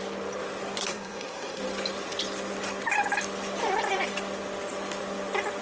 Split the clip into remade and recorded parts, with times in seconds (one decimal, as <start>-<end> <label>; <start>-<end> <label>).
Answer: 0.0-0.9 recorded; 0.9-1.6 remade; 1.6-5.6 recorded